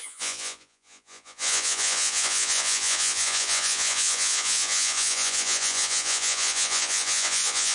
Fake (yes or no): yes